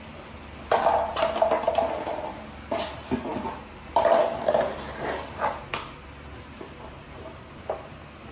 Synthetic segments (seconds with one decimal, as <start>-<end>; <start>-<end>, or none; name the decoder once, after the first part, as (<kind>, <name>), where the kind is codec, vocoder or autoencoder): none